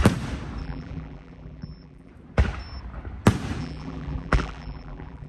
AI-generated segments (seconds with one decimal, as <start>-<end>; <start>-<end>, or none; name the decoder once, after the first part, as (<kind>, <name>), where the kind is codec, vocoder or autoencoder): 0.6-2.1 (vocoder, BigVGAN v2); 3.6-5.3